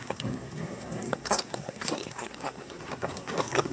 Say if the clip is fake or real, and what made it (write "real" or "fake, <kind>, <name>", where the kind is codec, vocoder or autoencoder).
fake, codec, SNAC